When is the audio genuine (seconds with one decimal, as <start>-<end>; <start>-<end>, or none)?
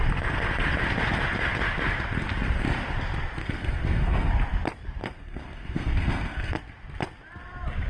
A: 0.0-3.4; 4.3-5.0; 6.6-7.9